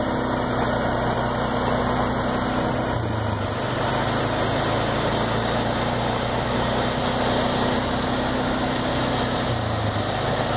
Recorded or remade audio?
recorded